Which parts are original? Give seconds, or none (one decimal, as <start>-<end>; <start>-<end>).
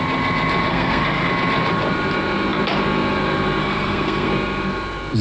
0.0-0.7; 1.3-3.6; 4.3-5.2